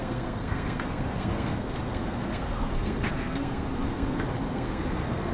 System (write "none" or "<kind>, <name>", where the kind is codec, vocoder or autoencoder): codec, SNAC